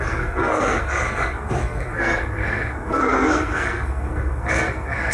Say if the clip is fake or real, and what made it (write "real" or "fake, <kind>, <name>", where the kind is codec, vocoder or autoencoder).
fake, codec, SNAC